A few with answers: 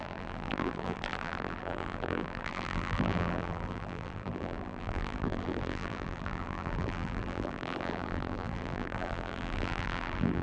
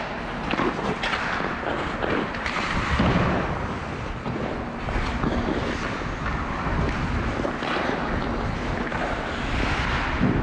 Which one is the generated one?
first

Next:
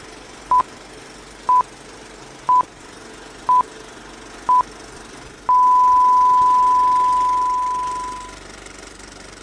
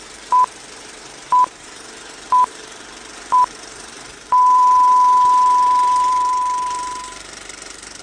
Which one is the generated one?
second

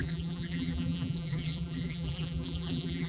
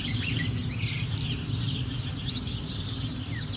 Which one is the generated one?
first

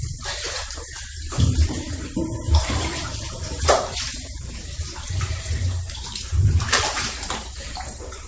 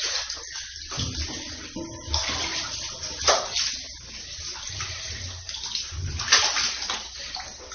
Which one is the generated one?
first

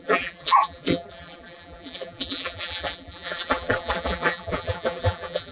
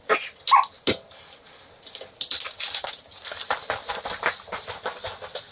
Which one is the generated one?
first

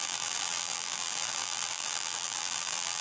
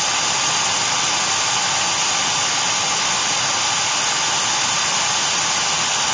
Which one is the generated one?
first